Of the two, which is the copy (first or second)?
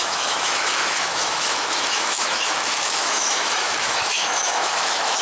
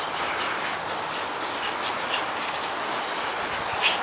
first